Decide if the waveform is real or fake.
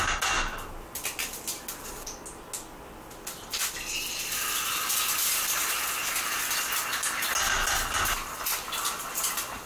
real